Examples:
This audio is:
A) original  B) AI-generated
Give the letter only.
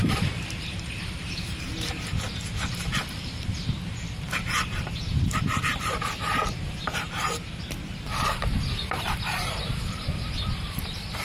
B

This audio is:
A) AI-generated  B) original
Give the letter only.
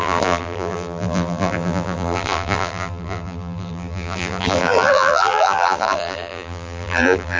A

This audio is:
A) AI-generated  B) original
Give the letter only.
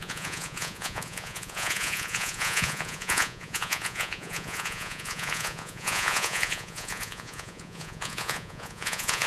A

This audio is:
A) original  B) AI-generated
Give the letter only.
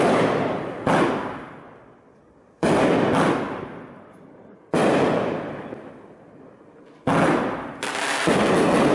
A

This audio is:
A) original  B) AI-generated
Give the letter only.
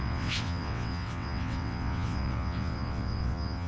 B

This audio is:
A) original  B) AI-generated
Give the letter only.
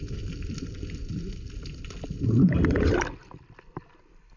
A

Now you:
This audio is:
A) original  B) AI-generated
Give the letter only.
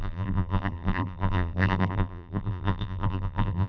B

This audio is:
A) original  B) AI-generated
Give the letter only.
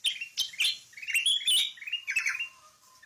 A